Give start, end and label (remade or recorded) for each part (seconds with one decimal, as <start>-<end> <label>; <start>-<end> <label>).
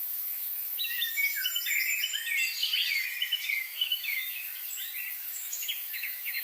0.0-1.2 remade; 1.2-3.6 recorded; 3.6-4.5 remade; 4.5-5.1 recorded; 5.1-6.4 remade